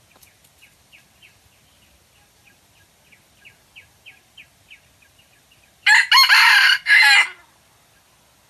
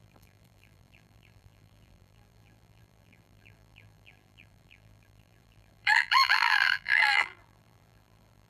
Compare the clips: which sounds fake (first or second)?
second